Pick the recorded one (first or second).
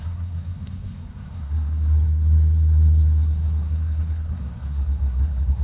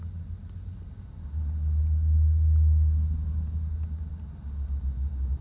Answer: second